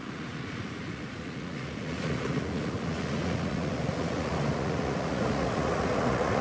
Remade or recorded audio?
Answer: remade